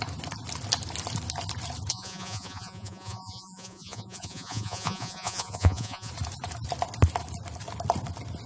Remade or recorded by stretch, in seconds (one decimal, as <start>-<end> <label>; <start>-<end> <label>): 0.0-1.9 recorded; 1.9-6.1 remade; 6.1-8.5 recorded